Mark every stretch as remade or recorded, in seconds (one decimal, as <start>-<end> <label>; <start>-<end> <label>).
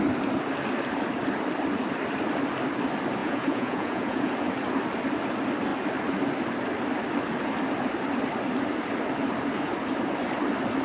0.0-3.2 recorded; 3.2-4.3 remade; 4.3-10.8 recorded